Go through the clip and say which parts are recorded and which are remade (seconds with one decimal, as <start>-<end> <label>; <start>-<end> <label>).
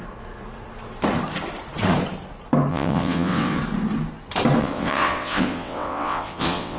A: 0.0-2.7 recorded; 2.7-3.6 remade; 3.6-4.6 recorded; 4.6-6.8 remade